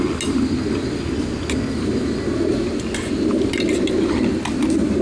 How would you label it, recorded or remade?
recorded